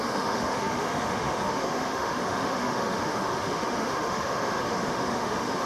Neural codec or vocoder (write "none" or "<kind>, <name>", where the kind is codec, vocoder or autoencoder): autoencoder, DAC-VAE